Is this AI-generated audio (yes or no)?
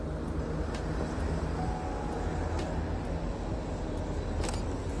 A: no